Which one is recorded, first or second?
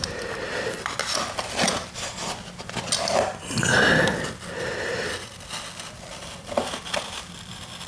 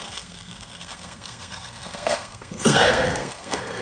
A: first